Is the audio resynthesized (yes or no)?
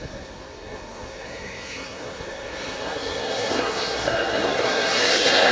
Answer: yes